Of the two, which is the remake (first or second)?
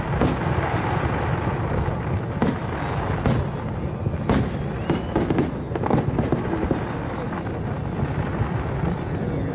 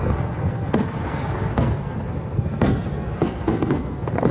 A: second